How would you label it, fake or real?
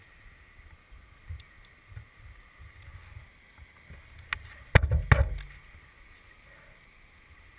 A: real